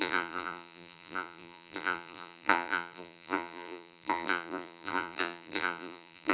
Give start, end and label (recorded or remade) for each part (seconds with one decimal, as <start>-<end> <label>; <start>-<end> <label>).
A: 0.0-6.3 remade